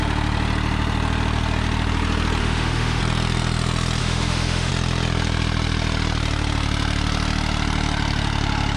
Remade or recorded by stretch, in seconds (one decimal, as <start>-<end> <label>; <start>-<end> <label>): 0.0-2.4 recorded; 2.4-3.0 remade; 3.0-4.0 recorded; 4.0-4.7 remade; 4.7-8.8 recorded